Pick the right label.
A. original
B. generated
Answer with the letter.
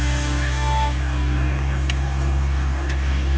B